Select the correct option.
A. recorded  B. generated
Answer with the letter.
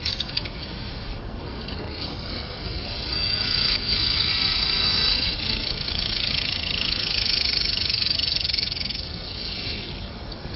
B